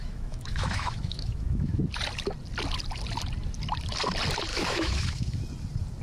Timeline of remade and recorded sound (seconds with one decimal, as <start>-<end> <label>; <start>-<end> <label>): 0.0-1.8 remade; 1.8-4.5 recorded; 4.5-5.4 remade; 5.4-6.0 recorded